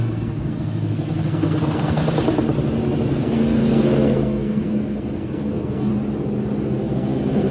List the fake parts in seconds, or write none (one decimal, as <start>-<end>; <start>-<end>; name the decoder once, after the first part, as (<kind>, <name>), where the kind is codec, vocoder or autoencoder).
0.0-2.0 (codec, SNAC); 3.1-5.9; 6.9-7.5